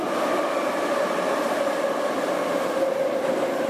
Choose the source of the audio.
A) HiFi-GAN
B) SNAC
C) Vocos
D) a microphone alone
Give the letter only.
D